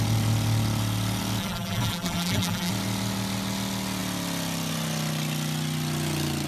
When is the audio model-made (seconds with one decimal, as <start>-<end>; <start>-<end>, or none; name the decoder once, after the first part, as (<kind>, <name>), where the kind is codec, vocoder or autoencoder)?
1.4-2.7 (vocoder, BigVGAN v2)